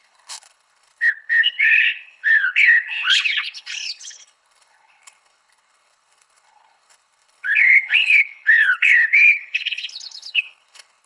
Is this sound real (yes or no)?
no